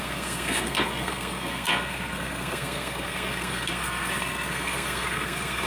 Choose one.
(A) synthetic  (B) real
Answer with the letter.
A